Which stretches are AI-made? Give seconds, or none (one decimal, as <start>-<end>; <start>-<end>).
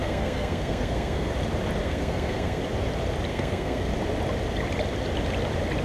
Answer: 0.0-1.3; 1.8-2.6; 3.3-3.9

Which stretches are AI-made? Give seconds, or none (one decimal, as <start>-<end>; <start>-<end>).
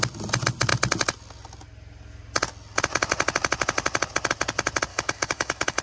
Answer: 4.9-5.8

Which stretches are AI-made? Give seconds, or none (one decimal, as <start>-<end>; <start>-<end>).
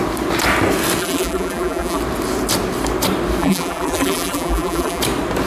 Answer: 1.0-2.0; 3.4-5.0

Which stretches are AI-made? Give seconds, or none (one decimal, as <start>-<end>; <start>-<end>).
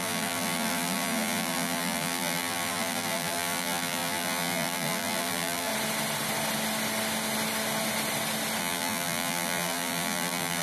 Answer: 0.0-5.7; 8.6-10.6